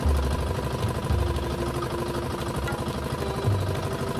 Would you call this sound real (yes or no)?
yes